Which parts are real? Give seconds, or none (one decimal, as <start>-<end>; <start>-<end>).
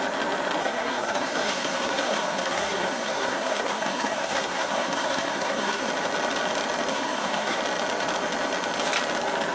0.0-0.6; 5.9-6.9; 7.6-9.5